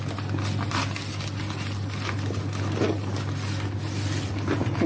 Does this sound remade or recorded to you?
recorded